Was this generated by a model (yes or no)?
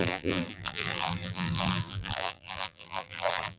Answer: yes